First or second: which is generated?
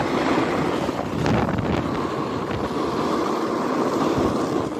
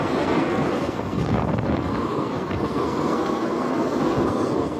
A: second